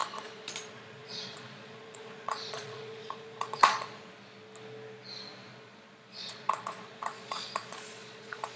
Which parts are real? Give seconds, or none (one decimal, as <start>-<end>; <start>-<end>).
4.1-5.5